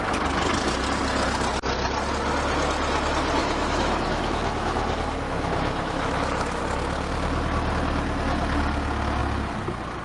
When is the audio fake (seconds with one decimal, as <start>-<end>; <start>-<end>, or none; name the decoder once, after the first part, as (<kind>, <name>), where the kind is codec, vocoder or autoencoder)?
3.4-6.6 (autoencoder, DAC-VAE)

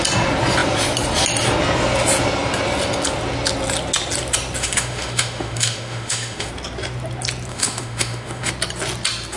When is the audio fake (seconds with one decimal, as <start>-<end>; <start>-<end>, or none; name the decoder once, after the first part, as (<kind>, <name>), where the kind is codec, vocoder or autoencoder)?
4.6-6.5 (autoencoder, DAC-VAE); 7.5-8.5

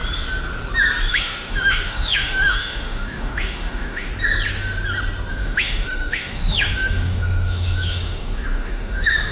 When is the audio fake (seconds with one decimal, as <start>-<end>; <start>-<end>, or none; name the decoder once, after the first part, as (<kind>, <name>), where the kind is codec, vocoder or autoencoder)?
1.1-4.1 (autoencoder, DAC-VAE); 5.3-9.3

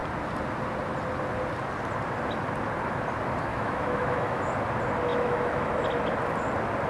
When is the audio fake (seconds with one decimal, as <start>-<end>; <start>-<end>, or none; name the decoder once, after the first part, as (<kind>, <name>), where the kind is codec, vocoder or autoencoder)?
3.5-4.4 (autoencoder, DAC-VAE); 5.1-5.8

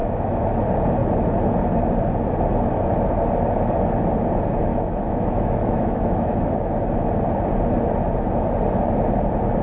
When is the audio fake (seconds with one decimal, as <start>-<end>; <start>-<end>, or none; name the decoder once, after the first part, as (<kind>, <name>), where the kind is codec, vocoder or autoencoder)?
0.0-0.5 (autoencoder, DAC-VAE); 4.7-6.8

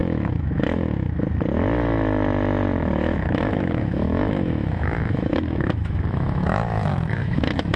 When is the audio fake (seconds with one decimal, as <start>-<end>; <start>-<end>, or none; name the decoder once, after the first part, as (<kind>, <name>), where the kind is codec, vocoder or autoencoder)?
0.0-1.1 (autoencoder, DAC-VAE); 2.8-7.8

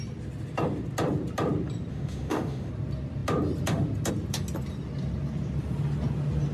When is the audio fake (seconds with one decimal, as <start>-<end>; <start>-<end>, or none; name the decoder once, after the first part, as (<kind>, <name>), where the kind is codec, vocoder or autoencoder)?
1.9-2.7 (autoencoder, DAC-VAE)

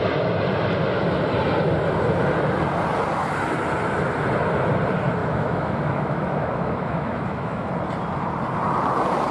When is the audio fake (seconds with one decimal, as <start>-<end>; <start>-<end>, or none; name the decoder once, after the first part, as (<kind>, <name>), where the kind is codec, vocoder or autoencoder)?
5.2-7.7 (autoencoder, DAC-VAE)